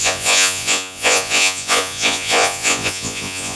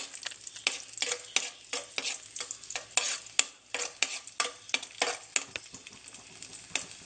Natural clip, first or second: second